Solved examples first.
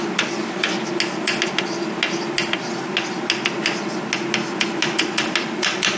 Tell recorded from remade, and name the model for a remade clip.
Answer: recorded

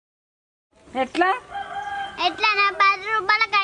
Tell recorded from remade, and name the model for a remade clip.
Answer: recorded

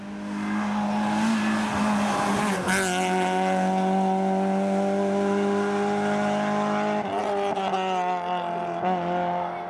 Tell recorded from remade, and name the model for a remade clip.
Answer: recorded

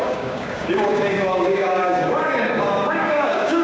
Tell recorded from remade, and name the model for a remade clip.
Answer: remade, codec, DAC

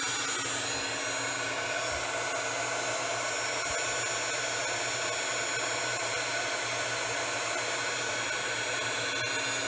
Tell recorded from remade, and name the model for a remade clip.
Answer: recorded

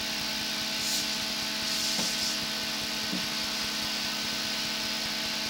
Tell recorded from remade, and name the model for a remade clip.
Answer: recorded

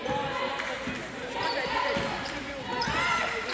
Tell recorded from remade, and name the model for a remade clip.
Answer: recorded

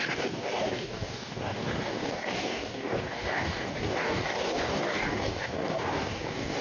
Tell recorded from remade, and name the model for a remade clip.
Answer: remade, codec, DAC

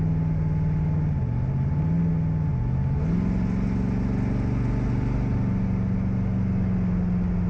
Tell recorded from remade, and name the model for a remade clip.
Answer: recorded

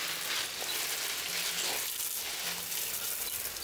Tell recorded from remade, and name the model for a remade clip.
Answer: recorded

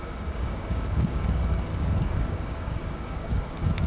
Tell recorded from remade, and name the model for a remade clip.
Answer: remade, codec, DAC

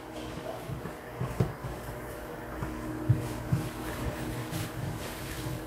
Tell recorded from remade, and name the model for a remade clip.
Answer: remade, codec, DAC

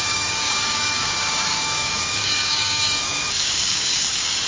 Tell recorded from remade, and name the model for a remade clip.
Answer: remade, codec, DAC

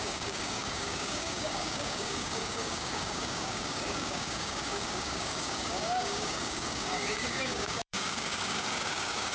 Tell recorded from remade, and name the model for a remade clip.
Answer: remade, codec, DAC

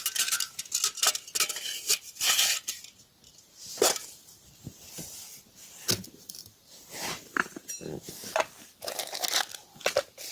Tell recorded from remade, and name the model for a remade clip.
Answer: recorded